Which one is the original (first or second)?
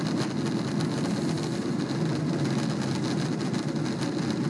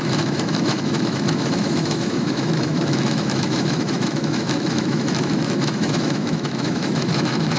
first